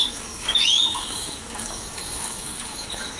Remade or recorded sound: remade